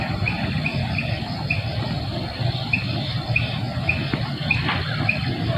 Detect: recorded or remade recorded